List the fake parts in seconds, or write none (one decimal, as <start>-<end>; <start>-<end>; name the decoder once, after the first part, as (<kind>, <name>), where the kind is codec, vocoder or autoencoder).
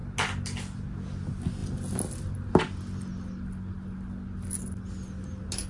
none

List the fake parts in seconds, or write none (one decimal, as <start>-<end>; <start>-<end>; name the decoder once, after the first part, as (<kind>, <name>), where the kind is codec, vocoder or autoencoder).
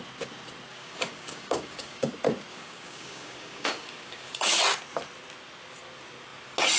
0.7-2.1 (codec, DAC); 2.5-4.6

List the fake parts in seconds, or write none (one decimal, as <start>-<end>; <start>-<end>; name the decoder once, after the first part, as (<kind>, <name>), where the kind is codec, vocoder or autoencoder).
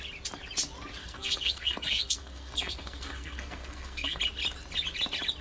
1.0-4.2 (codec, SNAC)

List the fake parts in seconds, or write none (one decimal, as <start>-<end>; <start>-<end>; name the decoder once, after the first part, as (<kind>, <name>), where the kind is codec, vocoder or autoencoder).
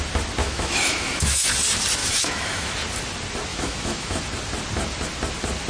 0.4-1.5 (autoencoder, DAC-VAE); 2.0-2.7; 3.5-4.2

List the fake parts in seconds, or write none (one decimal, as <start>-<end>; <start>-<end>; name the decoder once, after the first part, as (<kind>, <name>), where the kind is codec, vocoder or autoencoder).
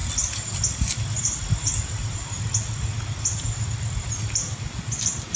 none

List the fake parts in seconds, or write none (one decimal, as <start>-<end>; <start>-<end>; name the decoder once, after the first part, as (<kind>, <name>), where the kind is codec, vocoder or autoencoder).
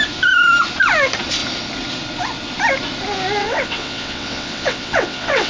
3.4-5.5 (vocoder, WaveNeXt)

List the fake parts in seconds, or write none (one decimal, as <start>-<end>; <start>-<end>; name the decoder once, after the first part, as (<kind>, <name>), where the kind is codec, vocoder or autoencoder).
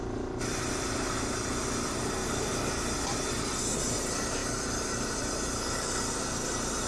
none